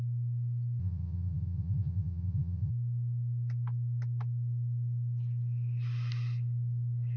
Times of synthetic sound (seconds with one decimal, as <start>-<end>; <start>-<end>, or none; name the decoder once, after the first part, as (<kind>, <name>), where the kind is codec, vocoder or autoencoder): 0.8-2.7 (vocoder, Vocos)